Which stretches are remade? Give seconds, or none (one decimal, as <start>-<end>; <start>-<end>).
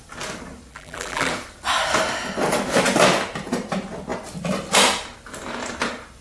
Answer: 0.7-1.3